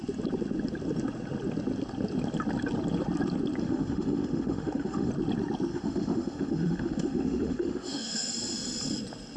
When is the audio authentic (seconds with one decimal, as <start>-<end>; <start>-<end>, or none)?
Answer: 0.0-3.6; 5.1-5.7; 8.3-9.4